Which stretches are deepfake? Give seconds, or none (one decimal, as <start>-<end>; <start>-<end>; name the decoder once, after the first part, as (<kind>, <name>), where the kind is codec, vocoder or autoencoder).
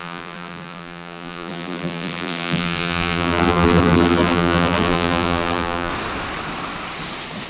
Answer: 0.0-5.9 (vocoder, BigVGAN v2)